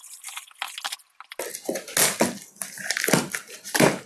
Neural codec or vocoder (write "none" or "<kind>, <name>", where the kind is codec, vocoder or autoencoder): none